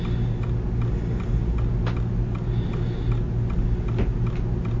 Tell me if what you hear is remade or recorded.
recorded